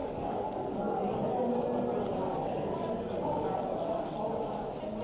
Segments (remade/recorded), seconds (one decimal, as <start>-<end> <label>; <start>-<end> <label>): 0.0-1.0 remade; 1.0-2.3 recorded; 2.3-2.8 remade; 2.8-5.0 recorded